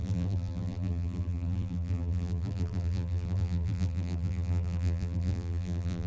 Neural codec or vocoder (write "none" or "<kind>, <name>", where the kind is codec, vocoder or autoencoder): vocoder, BigVGAN v2